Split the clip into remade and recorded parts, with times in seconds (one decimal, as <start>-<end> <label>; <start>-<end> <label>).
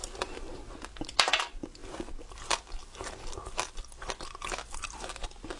0.0-5.6 recorded